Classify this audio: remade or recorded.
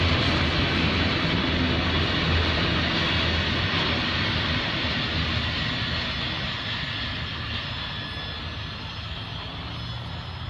recorded